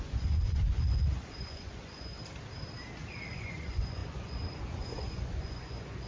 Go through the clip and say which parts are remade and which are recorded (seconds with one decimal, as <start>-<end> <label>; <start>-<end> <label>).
0.0-2.1 remade; 2.1-3.3 recorded; 3.3-6.1 remade